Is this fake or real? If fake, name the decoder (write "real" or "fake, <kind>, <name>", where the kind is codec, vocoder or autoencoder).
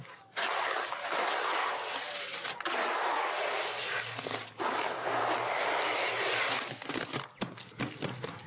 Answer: real